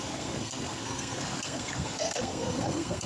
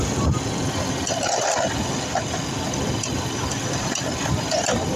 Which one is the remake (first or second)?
first